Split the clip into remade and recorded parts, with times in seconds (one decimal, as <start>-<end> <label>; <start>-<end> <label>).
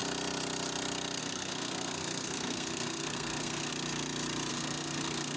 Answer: 0.0-1.2 recorded; 1.2-3.7 remade; 3.7-4.5 recorded; 4.5-5.4 remade